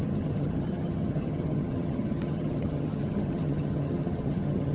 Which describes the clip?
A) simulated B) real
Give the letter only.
A